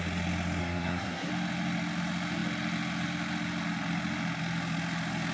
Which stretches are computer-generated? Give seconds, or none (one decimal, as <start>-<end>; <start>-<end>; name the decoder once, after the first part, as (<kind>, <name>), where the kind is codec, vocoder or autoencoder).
0.6-1.3 (codec, SNAC)